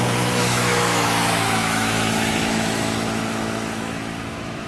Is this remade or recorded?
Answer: remade